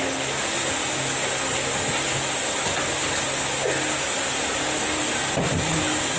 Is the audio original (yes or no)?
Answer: yes